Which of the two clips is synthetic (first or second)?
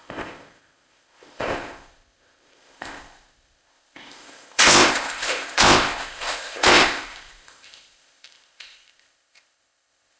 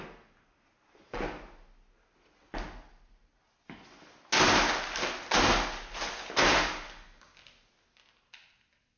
first